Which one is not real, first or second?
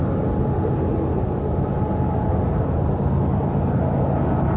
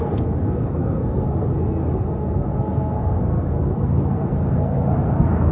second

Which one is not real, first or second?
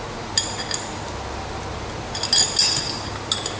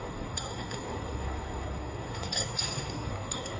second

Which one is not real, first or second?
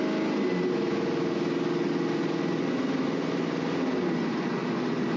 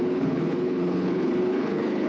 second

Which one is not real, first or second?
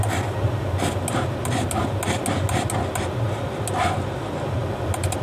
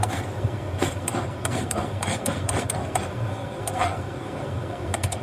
second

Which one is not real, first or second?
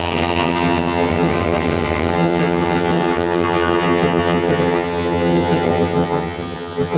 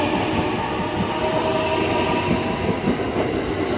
first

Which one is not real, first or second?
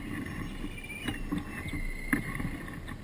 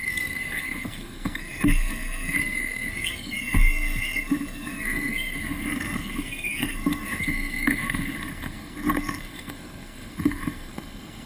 second